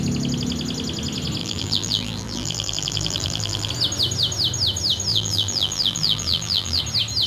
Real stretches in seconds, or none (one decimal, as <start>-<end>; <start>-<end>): 0.0-1.4; 3.7-5.1; 6.8-7.3